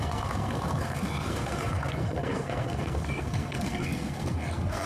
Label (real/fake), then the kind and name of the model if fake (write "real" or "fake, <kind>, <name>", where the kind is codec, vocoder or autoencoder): fake, codec, SNAC